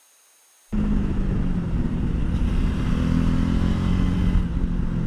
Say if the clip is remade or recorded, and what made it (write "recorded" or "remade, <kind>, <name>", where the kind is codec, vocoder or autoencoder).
recorded